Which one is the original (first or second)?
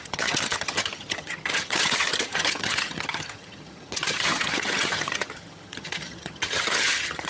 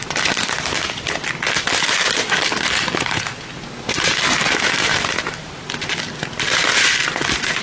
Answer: second